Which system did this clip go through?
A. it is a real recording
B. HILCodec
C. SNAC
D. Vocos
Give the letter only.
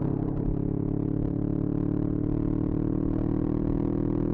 A